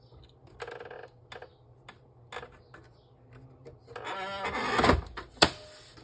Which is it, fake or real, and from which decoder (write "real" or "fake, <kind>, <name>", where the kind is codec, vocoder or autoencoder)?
real